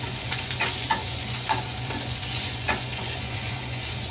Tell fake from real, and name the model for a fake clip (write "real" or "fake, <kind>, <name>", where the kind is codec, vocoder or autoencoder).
fake, vocoder, Vocos